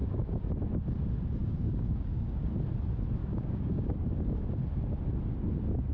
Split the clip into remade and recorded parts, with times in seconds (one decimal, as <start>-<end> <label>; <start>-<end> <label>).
0.0-0.5 remade; 0.5-1.4 recorded; 1.4-2.5 remade; 2.5-3.2 recorded; 3.2-4.5 remade; 4.5-5.9 recorded